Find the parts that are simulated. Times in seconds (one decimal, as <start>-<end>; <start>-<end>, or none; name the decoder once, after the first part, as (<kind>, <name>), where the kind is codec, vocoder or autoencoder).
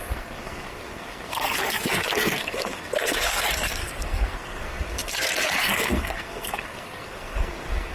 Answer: 0.0-7.9 (codec, SNAC)